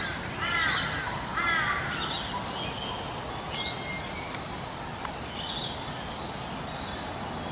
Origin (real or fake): real